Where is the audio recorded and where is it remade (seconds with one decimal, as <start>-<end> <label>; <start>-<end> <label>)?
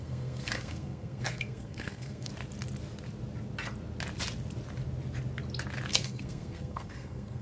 0.0-2.3 remade; 2.3-5.9 recorded; 5.9-7.4 remade